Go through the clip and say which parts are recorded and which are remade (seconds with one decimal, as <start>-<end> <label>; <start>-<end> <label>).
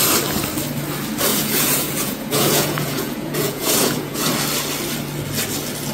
0.0-1.3 recorded; 1.3-4.3 remade; 4.3-5.9 recorded